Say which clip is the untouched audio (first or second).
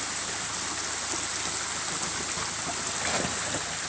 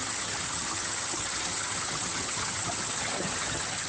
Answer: first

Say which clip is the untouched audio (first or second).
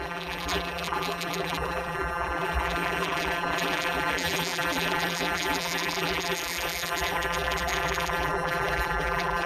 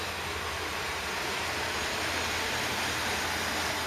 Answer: second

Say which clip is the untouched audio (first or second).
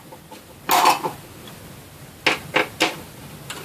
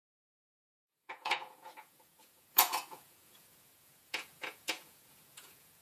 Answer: first